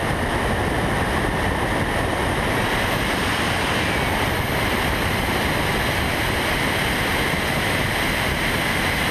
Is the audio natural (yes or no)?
yes